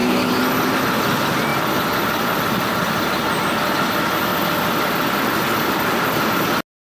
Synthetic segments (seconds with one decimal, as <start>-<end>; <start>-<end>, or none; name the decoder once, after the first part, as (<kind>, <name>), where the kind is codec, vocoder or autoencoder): 1.5-3.0 (vocoder, BigVGAN v2); 4.3-6.4